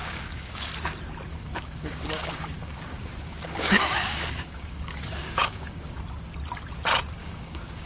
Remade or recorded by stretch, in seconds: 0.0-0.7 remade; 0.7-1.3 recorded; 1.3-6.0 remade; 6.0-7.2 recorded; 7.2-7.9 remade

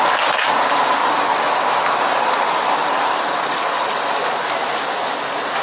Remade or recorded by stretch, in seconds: 0.0-5.6 recorded

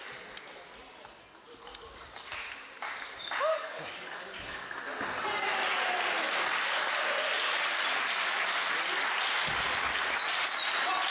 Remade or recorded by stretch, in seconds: 0.0-3.5 recorded; 3.5-4.7 remade; 4.7-11.1 recorded